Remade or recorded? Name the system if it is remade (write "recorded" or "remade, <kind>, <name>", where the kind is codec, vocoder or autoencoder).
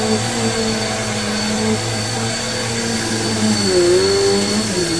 recorded